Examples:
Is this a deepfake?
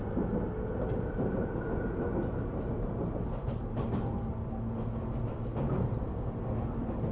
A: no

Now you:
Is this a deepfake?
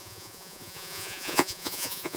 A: yes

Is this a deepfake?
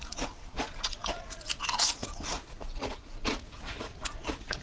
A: yes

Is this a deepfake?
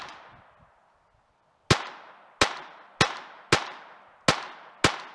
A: no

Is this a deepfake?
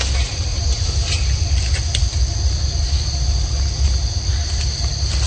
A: no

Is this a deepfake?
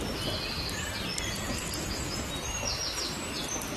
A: no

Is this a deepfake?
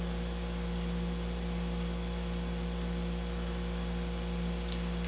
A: no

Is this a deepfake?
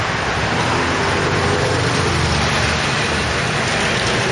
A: yes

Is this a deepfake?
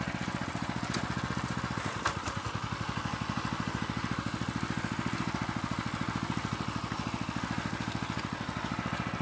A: no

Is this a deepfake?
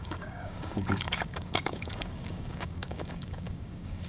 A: yes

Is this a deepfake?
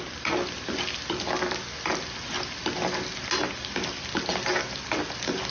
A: no